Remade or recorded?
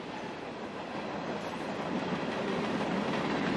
recorded